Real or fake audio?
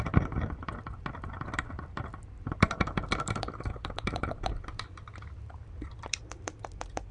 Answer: fake